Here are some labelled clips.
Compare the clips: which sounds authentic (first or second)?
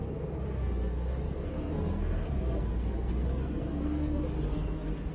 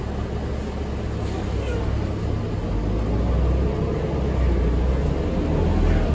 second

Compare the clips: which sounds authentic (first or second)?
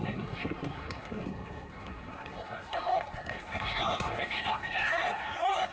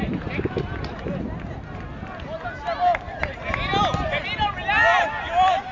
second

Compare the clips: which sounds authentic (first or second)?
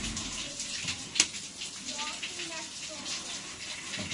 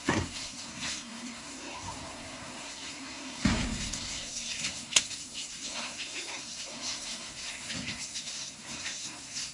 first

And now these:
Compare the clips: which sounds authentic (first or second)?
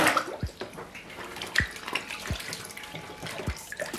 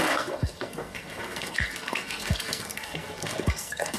first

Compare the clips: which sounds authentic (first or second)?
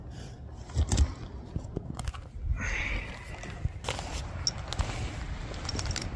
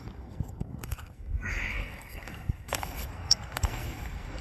first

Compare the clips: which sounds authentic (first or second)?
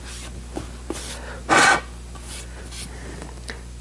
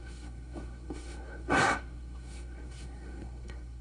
first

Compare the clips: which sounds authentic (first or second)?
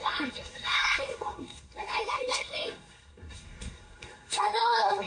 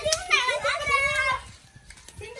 second